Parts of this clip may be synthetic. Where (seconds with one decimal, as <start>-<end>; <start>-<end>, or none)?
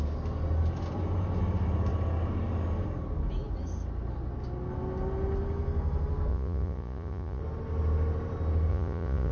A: 6.3-7.4; 8.7-9.3